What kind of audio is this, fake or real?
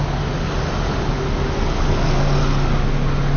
real